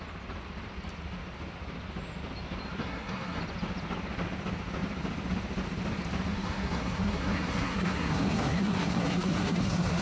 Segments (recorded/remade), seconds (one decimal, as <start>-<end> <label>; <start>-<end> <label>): 0.0-2.8 recorded; 2.8-3.4 remade; 3.4-6.3 recorded; 6.3-10.0 remade

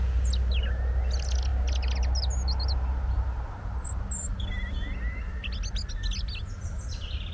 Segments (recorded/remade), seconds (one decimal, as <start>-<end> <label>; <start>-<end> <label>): 0.0-7.3 recorded

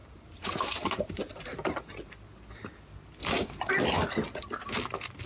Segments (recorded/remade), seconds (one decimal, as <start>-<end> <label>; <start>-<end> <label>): 0.0-2.1 remade; 2.1-3.2 recorded; 3.2-3.7 remade; 3.7-5.3 recorded

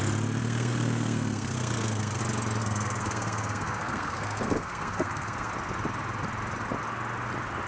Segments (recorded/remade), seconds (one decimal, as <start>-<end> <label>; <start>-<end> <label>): 0.0-0.4 recorded; 0.4-2.2 remade; 2.2-2.6 recorded; 2.6-5.5 remade; 5.5-7.7 recorded

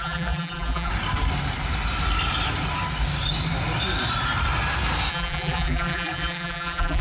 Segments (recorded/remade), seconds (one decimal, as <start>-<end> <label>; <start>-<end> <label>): 0.0-0.9 remade; 0.9-5.1 recorded; 5.1-7.0 remade

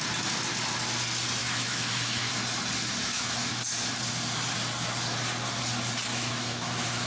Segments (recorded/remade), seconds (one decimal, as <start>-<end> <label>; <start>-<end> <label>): 0.0-1.4 recorded; 1.4-2.3 remade; 2.3-3.0 recorded; 3.0-3.5 remade; 3.5-6.1 recorded; 6.1-7.1 remade